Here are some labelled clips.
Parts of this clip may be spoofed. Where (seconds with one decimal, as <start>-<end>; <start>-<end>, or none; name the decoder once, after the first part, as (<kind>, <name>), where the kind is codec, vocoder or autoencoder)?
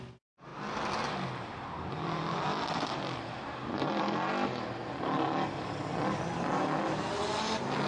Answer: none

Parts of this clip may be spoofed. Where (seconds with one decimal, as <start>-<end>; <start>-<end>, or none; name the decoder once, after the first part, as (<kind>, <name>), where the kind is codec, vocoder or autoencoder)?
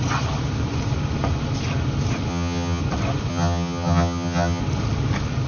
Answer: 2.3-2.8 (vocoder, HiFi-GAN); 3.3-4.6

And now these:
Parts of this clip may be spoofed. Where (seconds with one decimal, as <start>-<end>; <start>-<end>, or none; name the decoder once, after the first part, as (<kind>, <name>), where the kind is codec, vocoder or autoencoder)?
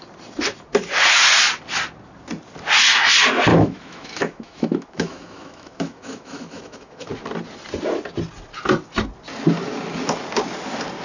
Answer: 3.5-7.1 (autoencoder, DAC-VAE)